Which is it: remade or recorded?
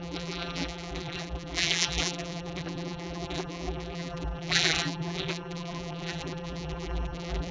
remade